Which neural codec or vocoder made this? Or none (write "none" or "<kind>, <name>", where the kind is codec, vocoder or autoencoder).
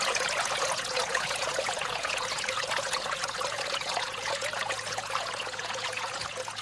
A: vocoder, Vocos